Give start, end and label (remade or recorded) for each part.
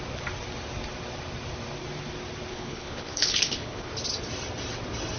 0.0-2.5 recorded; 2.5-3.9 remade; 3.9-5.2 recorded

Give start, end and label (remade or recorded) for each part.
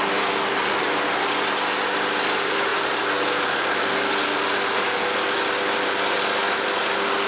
0.0-7.3 recorded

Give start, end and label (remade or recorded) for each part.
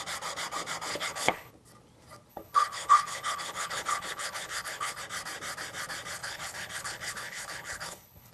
0.0-0.9 recorded; 0.9-1.5 remade; 1.5-2.3 recorded; 2.3-5.0 remade; 5.0-6.2 recorded; 6.2-8.3 remade